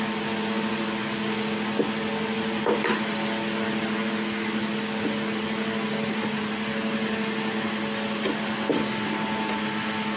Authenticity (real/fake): real